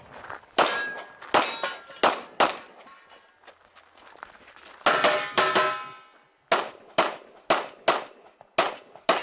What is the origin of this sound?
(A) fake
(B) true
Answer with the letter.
B